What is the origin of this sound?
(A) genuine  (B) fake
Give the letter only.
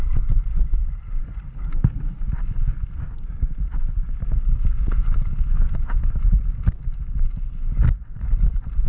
A